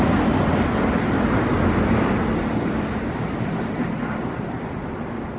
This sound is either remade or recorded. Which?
recorded